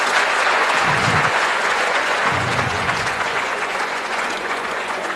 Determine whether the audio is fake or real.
fake